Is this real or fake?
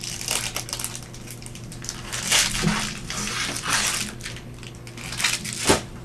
real